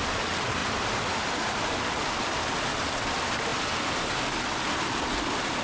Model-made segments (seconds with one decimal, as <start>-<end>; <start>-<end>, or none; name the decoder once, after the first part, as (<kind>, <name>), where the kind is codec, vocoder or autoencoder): none